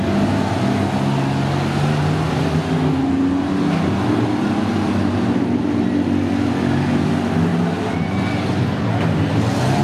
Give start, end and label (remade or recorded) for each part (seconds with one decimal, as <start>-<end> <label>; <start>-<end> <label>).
0.0-7.5 recorded; 7.5-8.2 remade; 8.2-9.8 recorded